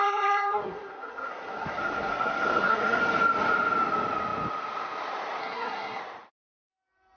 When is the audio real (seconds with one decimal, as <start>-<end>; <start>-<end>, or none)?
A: 3.0-5.4; 6.0-7.2